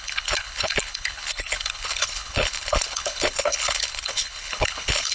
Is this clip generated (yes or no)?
yes